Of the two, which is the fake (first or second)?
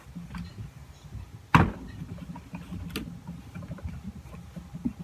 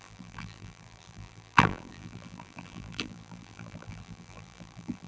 second